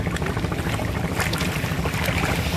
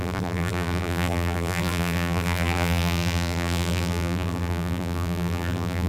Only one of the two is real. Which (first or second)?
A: first